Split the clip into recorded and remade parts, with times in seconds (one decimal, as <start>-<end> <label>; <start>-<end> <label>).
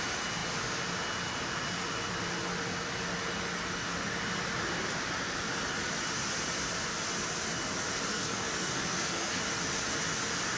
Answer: 0.0-8.1 recorded; 8.1-9.4 remade; 9.4-10.6 recorded